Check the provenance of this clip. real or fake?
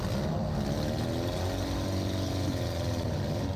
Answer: real